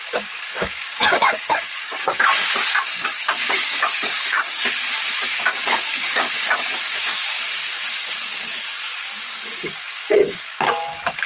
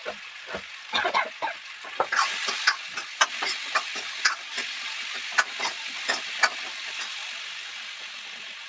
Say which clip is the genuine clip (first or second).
second